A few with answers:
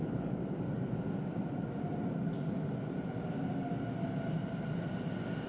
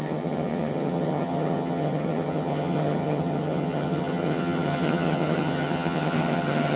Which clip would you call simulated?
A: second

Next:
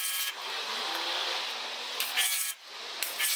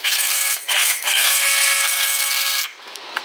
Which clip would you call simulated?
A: second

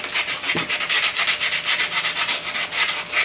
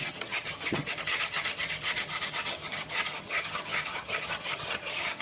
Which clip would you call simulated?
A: second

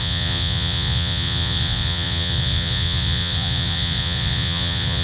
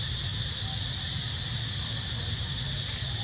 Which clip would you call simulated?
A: first